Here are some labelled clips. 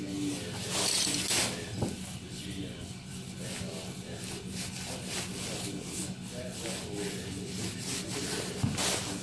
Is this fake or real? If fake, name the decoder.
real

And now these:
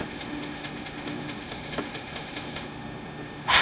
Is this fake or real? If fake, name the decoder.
fake, autoencoder, DAC-VAE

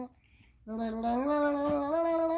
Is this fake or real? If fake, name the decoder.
real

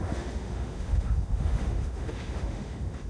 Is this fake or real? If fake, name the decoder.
fake, autoencoder, DAC-VAE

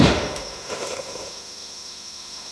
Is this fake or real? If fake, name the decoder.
fake, autoencoder, DAC-VAE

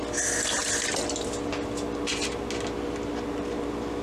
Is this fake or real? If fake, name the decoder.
real